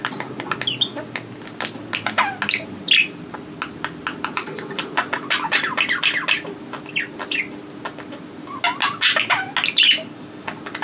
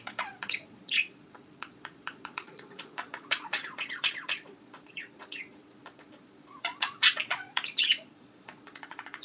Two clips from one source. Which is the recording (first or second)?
first